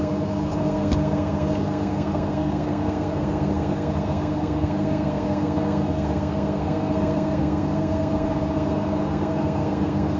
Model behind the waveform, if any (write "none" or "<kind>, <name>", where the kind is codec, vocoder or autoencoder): codec, SNAC